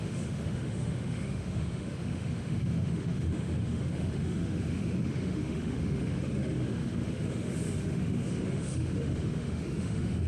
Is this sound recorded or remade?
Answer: remade